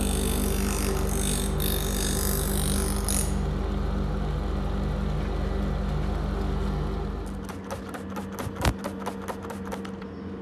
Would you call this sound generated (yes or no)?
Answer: no